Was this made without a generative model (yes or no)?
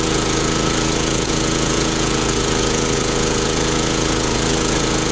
no